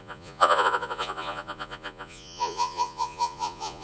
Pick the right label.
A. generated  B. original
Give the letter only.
A